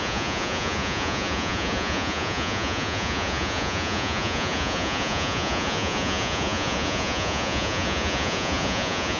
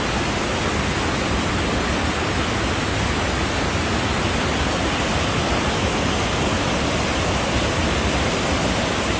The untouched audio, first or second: second